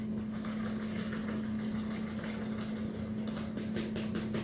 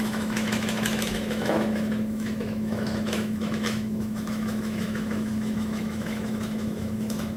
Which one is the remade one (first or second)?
second